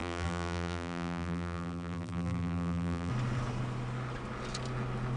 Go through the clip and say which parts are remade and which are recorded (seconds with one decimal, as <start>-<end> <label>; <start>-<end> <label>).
0.0-3.1 remade; 3.1-5.2 recorded